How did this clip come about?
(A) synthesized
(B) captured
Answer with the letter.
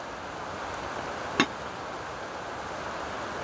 B